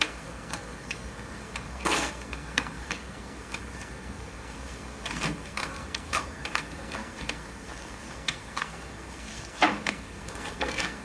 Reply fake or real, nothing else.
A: fake